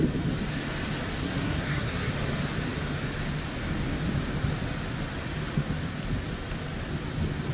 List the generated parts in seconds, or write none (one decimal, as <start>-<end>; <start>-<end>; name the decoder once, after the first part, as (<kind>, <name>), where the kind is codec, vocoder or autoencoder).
1.2-2.1 (codec, SNAC)